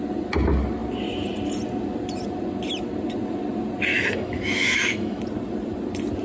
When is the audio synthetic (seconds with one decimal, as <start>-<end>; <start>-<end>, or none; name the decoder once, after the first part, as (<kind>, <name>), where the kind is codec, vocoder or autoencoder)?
3.9-5.2 (autoencoder, DAC-VAE)